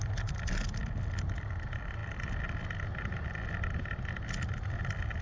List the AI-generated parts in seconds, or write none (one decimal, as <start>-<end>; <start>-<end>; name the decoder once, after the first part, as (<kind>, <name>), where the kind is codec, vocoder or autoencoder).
none